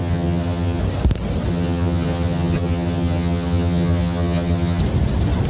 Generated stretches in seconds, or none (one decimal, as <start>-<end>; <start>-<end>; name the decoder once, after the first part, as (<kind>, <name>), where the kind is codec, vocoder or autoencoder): 0.0-0.8 (vocoder, HiFi-GAN); 1.5-4.8